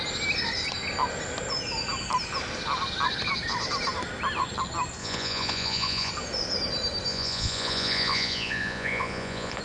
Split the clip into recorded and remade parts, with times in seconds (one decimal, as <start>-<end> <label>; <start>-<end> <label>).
0.0-5.0 recorded; 5.0-6.1 remade; 6.1-7.1 recorded; 7.1-9.6 remade